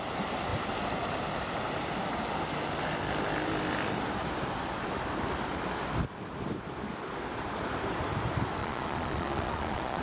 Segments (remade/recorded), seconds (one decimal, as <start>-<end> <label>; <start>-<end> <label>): 0.0-8.6 recorded; 8.6-10.0 remade